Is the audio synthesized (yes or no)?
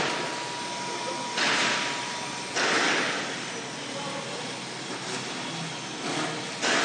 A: no